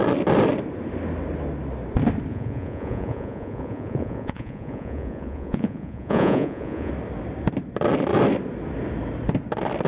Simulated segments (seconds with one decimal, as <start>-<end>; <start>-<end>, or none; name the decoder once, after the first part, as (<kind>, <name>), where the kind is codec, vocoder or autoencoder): 2.3-6.9 (vocoder, Vocos)